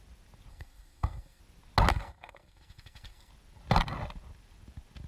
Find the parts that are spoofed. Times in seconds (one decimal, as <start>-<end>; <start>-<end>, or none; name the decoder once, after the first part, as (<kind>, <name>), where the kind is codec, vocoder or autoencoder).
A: 0.5-1.4 (codec, SNAC); 1.9-3.3